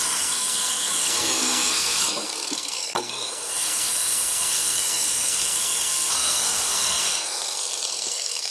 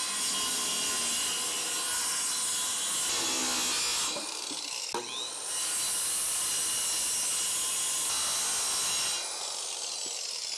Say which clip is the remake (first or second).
first